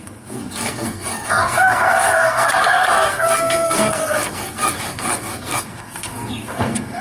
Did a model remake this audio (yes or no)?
yes